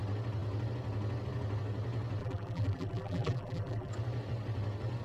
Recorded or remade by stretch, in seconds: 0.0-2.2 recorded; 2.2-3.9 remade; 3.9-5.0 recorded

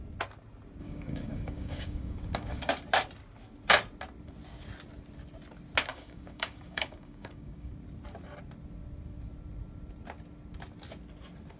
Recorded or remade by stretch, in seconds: 0.0-0.8 recorded; 0.8-2.7 remade; 2.7-5.9 recorded; 5.9-7.7 remade; 7.7-11.6 recorded

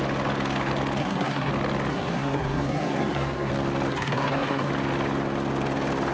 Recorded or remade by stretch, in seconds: 0.0-1.0 recorded; 1.0-1.5 remade; 1.5-1.9 recorded; 1.9-3.5 remade; 3.5-3.9 recorded; 3.9-4.7 remade; 4.7-6.1 recorded

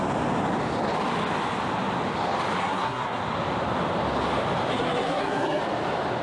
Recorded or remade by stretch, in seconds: 0.0-2.6 recorded; 2.6-3.2 remade; 3.2-4.7 recorded; 4.7-5.6 remade; 5.6-6.2 recorded